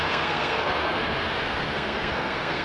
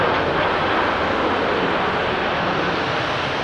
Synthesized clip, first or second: first